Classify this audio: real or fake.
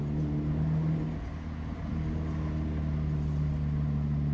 real